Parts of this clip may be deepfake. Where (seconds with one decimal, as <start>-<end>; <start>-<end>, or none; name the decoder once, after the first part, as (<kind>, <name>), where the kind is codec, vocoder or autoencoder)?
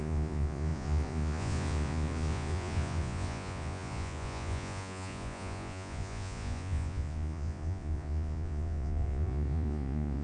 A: 0.0-10.2 (vocoder, Vocos)